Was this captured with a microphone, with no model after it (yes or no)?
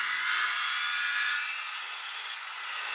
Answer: no